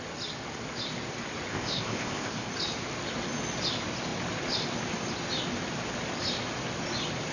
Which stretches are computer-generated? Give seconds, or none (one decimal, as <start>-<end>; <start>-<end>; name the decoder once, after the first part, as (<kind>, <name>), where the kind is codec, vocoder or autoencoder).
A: 1.5-2.5 (codec, ZipCodec)